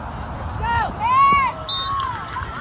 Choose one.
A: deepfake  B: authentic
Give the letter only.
B